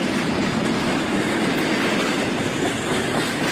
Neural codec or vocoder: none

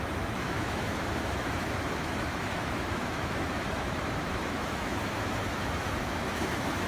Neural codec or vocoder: autoencoder, DAC-VAE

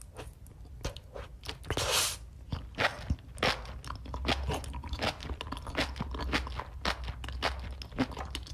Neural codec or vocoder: none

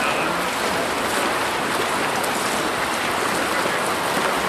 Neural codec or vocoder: none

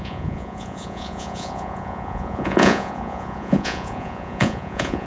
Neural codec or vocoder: vocoder, Vocos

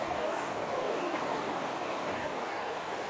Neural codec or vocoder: codec, DAC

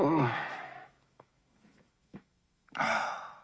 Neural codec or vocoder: autoencoder, DAC-VAE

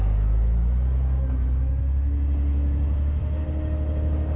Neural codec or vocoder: none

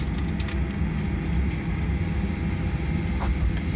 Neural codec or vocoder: none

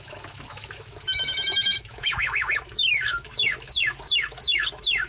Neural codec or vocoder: autoencoder, DAC-VAE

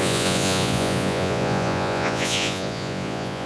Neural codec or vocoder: vocoder, Vocos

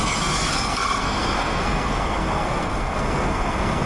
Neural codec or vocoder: codec, SNAC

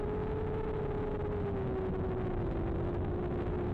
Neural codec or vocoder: none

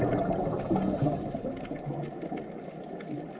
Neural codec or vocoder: none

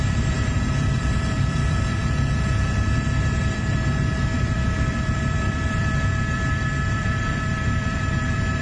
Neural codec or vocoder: vocoder, BigVGAN v2